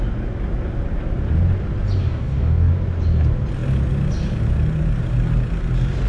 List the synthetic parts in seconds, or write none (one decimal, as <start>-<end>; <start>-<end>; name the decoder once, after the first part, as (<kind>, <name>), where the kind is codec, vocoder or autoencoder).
2.0-2.7 (codec, DAC)